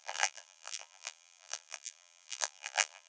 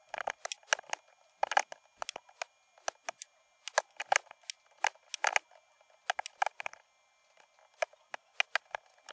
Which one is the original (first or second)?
second